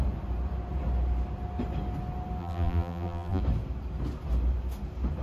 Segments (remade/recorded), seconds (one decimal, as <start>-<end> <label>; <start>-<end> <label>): 0.0-2.4 recorded; 2.4-3.4 remade; 3.4-5.2 recorded